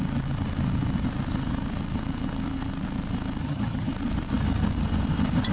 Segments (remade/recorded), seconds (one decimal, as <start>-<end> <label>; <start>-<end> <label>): 0.0-3.4 recorded; 3.4-3.9 remade; 3.9-5.5 recorded